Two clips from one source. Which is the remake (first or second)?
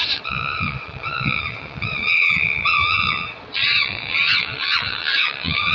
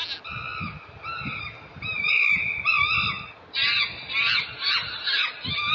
first